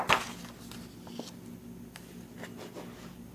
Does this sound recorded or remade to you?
recorded